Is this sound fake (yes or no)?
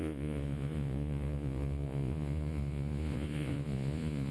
yes